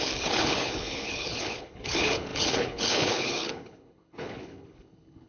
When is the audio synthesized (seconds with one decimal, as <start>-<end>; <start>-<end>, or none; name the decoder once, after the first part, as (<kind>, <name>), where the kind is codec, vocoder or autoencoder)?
0.0-5.3 (codec, HILCodec)